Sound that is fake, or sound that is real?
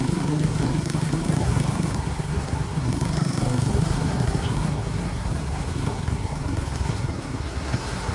fake